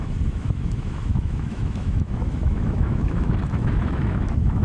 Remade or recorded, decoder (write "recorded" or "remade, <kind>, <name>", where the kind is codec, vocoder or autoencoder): remade, autoencoder, DAC-VAE